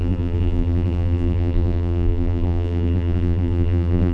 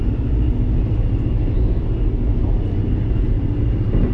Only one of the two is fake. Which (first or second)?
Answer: first